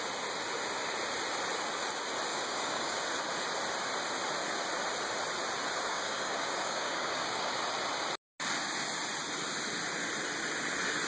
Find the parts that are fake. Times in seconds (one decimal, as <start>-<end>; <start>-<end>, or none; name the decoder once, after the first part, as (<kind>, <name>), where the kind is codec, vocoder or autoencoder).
2.3-3.0 (codec, DAC); 5.9-7.5